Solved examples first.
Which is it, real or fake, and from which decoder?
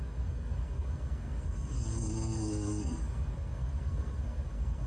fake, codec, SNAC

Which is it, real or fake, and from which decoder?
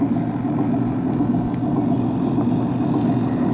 real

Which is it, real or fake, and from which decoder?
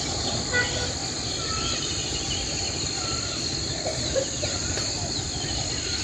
real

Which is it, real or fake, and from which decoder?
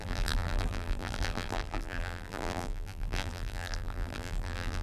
fake, vocoder, BigVGAN v2